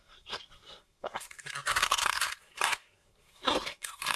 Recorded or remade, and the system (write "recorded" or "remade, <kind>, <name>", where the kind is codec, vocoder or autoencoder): remade, codec, SNAC